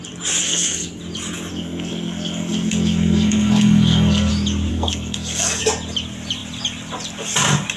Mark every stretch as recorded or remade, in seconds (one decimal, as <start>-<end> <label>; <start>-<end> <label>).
0.0-0.4 recorded; 0.4-1.0 remade; 1.0-1.5 recorded; 1.5-4.3 remade; 4.3-4.7 recorded; 4.7-5.6 remade; 5.6-7.8 recorded